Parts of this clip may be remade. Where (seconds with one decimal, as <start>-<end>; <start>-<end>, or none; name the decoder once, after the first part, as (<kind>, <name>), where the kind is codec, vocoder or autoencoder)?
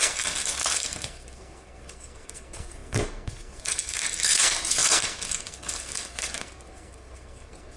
0.0-7.8 (codec, SNAC)